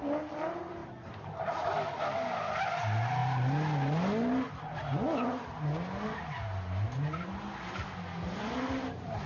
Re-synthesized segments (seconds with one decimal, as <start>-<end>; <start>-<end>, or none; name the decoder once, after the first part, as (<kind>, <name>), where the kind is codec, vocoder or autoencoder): none